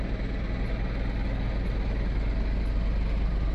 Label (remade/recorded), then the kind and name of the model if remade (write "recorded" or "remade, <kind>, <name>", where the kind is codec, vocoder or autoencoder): recorded